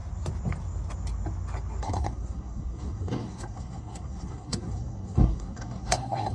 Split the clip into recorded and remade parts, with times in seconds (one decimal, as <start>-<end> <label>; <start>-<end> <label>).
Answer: 0.0-1.8 recorded; 1.8-6.3 remade